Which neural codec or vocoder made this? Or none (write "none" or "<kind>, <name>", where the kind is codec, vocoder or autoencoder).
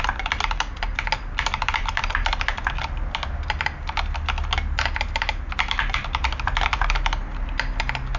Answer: none